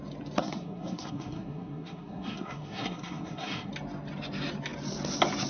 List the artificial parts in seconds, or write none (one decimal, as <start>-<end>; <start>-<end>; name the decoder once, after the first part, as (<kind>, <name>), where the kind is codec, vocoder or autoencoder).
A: 0.4-3.7 (codec, SNAC)